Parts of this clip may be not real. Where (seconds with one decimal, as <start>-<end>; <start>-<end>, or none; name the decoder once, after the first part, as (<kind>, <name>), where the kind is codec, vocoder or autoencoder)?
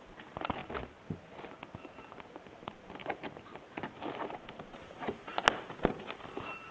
0.0-0.6 (vocoder, BigVGAN v2); 2.6-3.0; 4.3-5.3